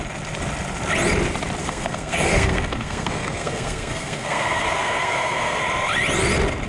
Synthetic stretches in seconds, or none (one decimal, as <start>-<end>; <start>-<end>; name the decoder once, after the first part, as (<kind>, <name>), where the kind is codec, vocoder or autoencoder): 1.6-5.6 (codec, SNAC)